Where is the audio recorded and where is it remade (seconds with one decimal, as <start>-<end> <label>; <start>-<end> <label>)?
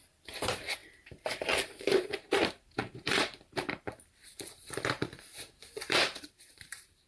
0.0-7.1 remade